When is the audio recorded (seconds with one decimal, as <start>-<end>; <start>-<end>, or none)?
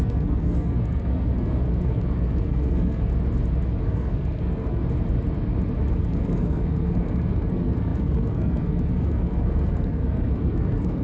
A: 3.1-3.8; 4.8-6.0